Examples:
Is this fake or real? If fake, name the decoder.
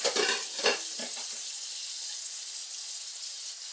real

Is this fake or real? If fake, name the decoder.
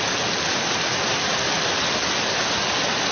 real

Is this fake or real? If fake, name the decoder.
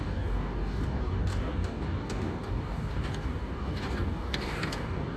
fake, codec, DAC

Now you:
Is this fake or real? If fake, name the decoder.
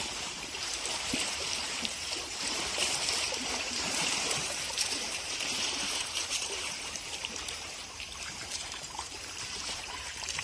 fake, vocoder, BigVGAN v2